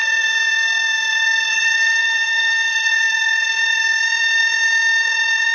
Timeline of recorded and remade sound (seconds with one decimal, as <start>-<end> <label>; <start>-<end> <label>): 0.0-1.5 recorded; 1.5-2.9 remade; 2.9-5.5 recorded